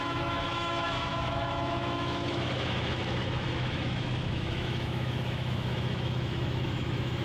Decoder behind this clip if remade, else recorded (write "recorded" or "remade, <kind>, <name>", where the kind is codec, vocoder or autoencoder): remade, autoencoder, DAC-VAE